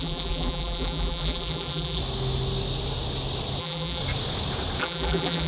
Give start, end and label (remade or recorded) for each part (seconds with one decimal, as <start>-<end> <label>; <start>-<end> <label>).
0.0-2.0 remade; 2.0-3.6 recorded; 3.6-4.0 remade; 4.0-4.8 recorded; 4.8-5.5 remade